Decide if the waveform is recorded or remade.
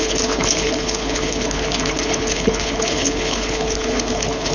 remade